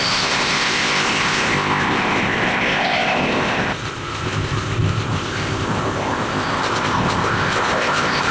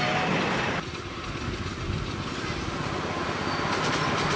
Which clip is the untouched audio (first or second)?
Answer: second